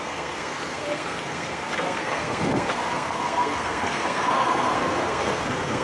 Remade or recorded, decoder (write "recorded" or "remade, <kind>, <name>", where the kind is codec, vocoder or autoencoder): remade, codec, SNAC